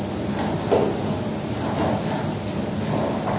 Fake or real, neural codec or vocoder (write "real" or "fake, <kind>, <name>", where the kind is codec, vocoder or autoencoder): real